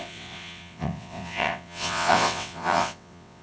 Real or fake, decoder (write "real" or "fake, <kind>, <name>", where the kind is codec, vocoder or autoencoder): fake, vocoder, WaveNeXt